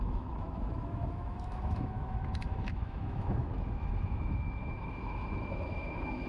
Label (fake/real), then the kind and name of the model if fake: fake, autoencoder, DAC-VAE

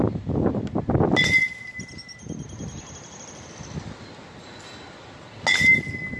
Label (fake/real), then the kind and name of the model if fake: real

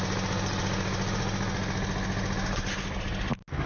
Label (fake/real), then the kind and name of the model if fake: real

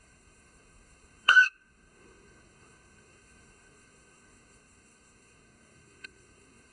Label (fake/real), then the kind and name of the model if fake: fake, codec, SNAC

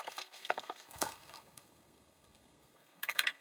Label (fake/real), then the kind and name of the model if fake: fake, codec, SNAC